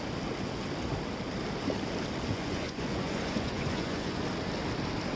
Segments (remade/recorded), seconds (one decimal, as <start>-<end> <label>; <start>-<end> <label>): 0.0-2.3 recorded; 2.3-4.2 remade; 4.2-5.2 recorded